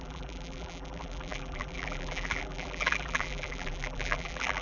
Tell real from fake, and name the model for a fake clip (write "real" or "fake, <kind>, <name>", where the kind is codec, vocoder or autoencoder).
fake, vocoder, BigVGAN v2